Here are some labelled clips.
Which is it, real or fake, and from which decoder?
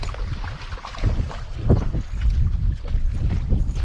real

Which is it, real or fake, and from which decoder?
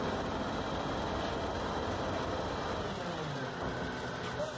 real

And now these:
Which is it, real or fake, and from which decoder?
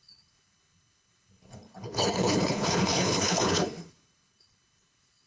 fake, codec, HILCodec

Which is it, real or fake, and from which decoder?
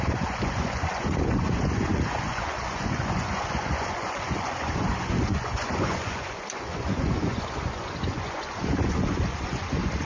fake, vocoder, Vocos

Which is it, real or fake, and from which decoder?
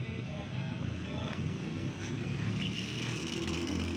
fake, codec, SNAC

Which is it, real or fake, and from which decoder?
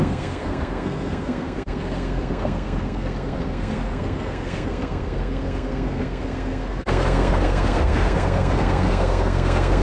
fake, codec, SNAC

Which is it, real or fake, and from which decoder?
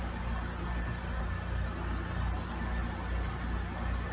real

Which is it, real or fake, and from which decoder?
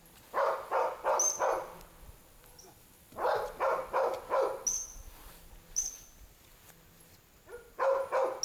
real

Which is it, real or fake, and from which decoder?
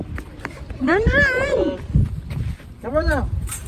fake, vocoder, BigVGAN v2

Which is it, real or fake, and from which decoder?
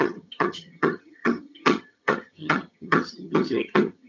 fake, vocoder, HiFi-GAN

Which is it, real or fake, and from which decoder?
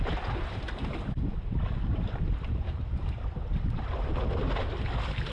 real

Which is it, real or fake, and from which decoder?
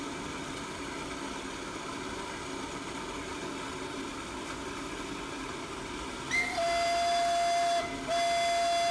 real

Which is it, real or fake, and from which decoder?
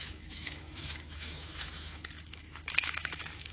fake, autoencoder, DAC-VAE